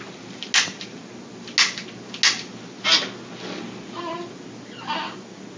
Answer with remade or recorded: recorded